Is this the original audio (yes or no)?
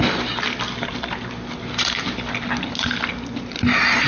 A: yes